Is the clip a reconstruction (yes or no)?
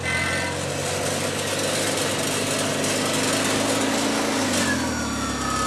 no